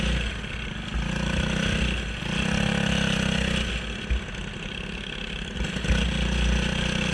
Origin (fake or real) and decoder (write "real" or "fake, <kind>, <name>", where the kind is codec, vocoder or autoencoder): real